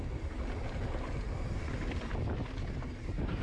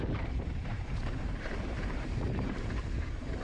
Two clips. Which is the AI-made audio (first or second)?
second